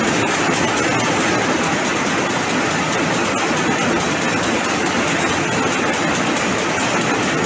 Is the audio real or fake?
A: real